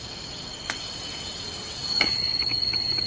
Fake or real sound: real